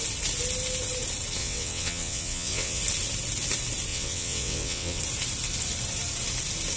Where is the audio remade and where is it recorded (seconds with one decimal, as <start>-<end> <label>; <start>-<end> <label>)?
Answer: 0.0-1.4 recorded; 1.4-2.8 remade; 2.8-3.9 recorded; 3.9-5.0 remade; 5.0-6.8 recorded